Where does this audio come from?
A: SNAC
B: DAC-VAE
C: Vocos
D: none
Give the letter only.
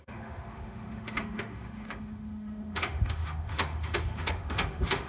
B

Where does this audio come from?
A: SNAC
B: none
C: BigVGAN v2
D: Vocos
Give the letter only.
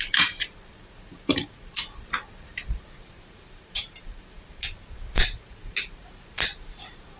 C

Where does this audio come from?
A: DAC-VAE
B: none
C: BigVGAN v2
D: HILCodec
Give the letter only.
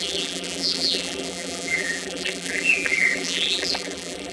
C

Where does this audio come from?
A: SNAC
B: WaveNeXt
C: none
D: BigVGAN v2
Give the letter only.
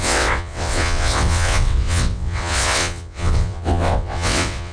B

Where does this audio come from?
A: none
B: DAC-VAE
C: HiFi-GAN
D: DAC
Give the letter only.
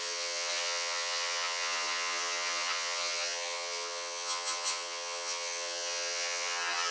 C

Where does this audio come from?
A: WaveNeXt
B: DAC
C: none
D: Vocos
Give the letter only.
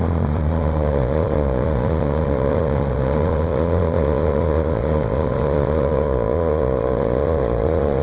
D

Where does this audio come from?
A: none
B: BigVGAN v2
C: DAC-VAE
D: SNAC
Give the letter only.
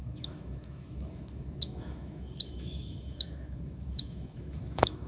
C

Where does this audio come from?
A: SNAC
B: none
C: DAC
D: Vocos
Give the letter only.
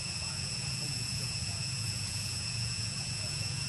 D